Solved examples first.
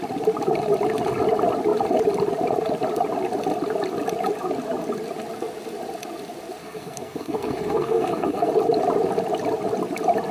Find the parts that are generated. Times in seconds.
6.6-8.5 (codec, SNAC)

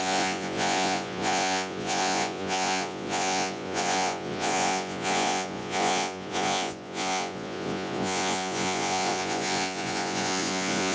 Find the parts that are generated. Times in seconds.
0.0-10.9 (vocoder, Vocos)